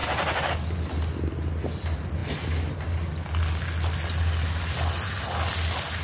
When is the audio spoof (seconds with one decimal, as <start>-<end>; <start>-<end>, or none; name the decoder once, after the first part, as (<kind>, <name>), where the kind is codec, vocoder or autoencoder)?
none